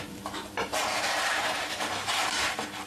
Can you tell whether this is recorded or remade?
remade